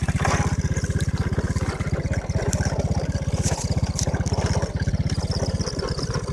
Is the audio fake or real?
real